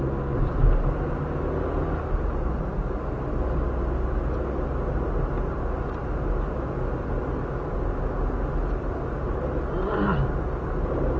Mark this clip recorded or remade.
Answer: recorded